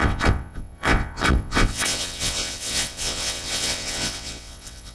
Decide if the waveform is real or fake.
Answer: fake